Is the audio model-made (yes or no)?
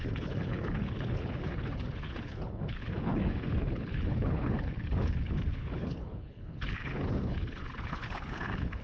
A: yes